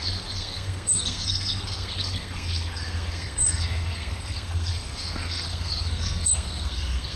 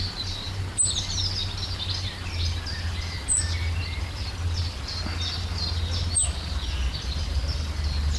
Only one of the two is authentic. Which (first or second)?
second